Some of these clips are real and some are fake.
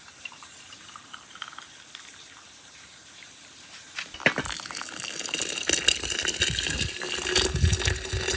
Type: real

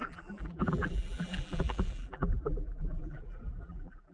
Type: fake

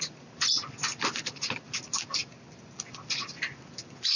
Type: real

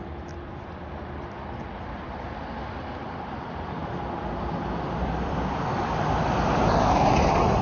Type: fake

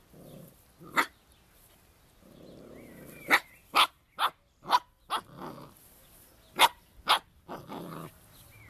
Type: real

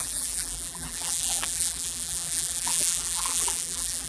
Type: fake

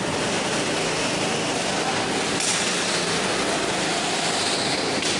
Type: real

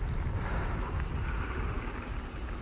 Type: real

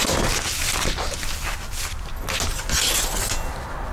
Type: real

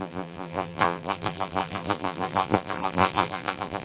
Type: fake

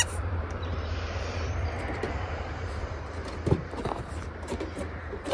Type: fake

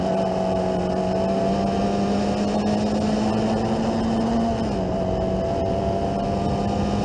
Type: real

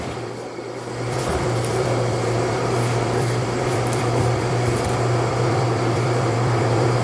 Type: fake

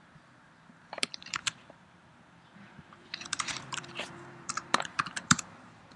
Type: fake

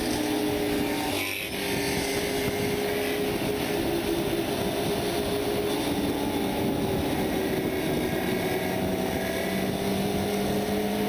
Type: real